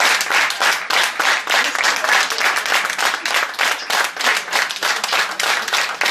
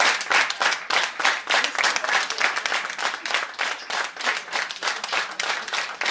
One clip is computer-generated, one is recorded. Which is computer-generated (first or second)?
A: second